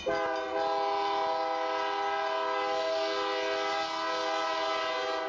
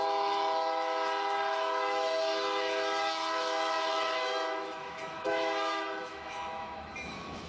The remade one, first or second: second